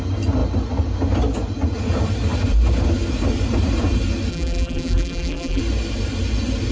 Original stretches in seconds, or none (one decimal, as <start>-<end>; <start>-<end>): 0.0-4.3; 5.6-6.7